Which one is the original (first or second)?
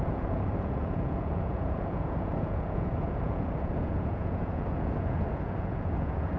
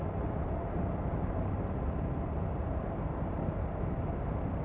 second